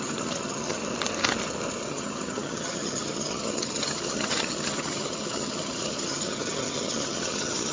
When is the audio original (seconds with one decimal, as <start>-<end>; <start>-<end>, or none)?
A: 0.8-1.9